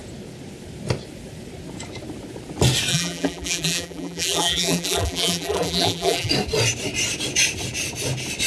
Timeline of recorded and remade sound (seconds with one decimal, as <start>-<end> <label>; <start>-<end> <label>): 0.0-2.9 recorded; 2.9-6.3 remade; 6.3-8.5 recorded